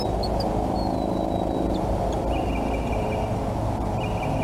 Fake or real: real